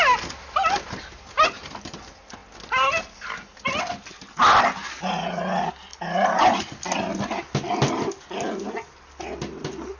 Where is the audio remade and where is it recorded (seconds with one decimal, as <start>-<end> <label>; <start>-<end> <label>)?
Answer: 0.0-10.0 recorded

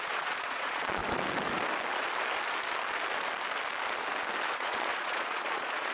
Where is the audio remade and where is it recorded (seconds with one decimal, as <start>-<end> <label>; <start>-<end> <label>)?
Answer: 0.0-1.0 remade; 1.0-4.5 recorded; 4.5-5.9 remade

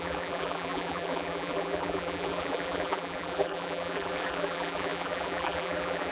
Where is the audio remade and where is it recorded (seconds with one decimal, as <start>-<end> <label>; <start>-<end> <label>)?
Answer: 0.0-6.1 remade